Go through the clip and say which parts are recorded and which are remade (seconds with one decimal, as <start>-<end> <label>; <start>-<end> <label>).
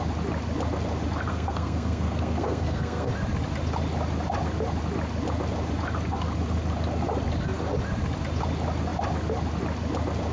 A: 0.0-1.3 recorded; 1.3-3.1 remade; 3.1-10.3 recorded